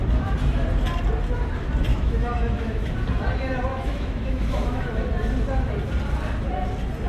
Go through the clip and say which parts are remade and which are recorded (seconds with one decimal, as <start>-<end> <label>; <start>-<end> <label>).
0.0-1.9 recorded; 1.9-2.9 remade; 2.9-3.7 recorded; 3.7-4.8 remade; 4.8-7.1 recorded

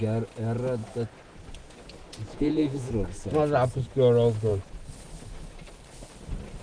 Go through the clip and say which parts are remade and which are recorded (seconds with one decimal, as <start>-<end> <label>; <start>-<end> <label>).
0.0-2.3 recorded; 2.3-2.9 remade; 2.9-6.6 recorded